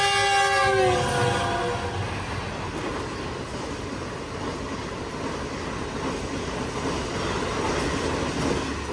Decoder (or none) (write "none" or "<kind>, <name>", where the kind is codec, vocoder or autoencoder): none